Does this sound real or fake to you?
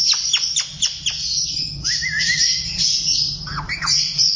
fake